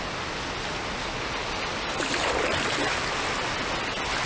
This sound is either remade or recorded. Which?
recorded